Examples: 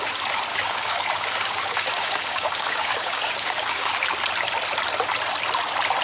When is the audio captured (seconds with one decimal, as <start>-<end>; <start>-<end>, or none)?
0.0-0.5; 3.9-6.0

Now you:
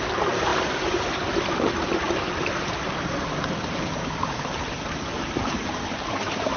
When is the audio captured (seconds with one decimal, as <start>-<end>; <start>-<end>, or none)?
0.0-6.6

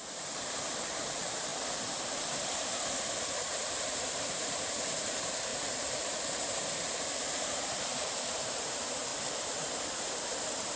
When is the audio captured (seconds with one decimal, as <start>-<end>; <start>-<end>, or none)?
1.5-2.1; 2.7-3.3; 9.1-10.4

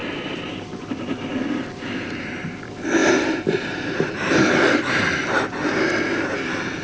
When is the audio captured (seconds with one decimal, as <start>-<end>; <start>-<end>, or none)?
0.0-6.8